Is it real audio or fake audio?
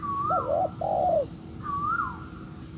real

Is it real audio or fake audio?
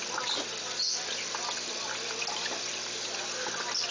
real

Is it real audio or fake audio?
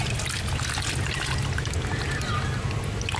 real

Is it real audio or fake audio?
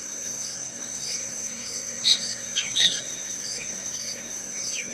fake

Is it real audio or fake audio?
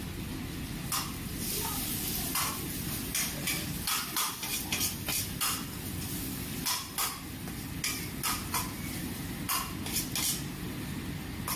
real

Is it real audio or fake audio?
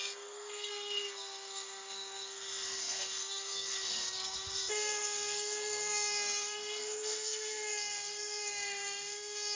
fake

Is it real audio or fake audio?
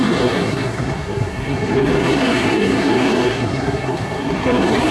fake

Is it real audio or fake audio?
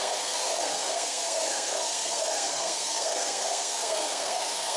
fake